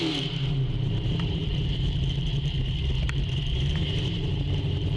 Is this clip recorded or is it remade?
remade